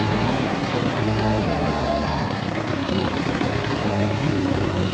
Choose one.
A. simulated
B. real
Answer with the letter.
A